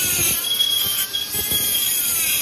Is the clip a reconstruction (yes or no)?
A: yes